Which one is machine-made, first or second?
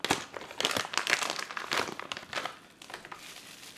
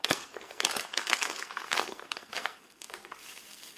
second